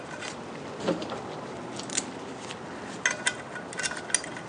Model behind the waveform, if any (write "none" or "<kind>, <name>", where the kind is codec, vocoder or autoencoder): none